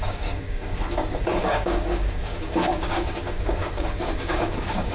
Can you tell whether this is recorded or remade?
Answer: remade